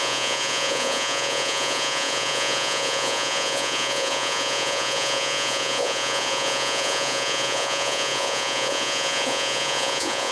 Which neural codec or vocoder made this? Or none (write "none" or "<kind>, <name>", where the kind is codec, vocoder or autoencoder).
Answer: vocoder, Vocos